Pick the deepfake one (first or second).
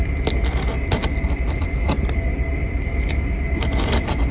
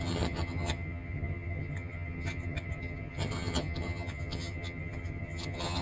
second